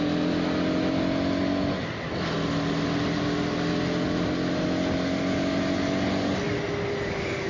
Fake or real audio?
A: real